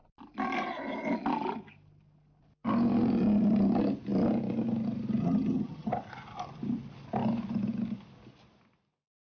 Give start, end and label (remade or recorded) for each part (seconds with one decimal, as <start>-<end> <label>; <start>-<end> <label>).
0.0-5.2 recorded; 5.2-5.9 remade; 5.9-9.2 recorded